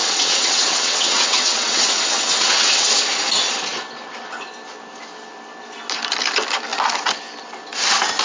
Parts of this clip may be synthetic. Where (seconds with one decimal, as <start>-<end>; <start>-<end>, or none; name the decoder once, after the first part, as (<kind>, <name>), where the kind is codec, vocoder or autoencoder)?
0.0-2.9 (vocoder, WaveNeXt)